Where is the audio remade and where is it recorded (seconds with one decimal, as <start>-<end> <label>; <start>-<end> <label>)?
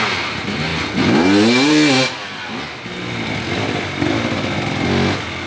0.0-5.5 recorded